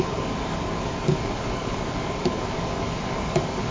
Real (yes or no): no